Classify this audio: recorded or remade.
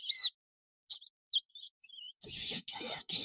remade